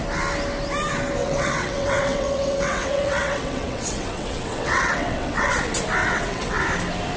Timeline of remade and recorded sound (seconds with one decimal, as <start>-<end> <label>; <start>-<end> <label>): 0.0-1.2 recorded; 1.2-5.5 remade; 5.5-6.0 recorded; 6.0-6.6 remade; 6.6-7.2 recorded